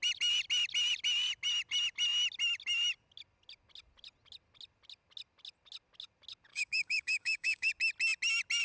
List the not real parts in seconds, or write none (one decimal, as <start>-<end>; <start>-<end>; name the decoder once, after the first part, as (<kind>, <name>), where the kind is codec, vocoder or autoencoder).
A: 6.5-7.7 (codec, DAC)